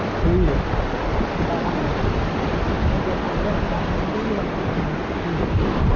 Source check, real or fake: real